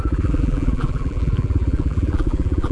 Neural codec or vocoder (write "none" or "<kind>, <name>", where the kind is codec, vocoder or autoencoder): vocoder, BigVGAN v2